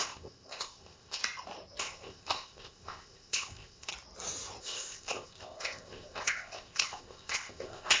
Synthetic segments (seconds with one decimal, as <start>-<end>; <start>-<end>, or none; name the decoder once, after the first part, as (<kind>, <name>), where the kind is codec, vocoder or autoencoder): 0.0-1.2 (codec, ZipCodec); 1.8-3.9; 4.6-8.0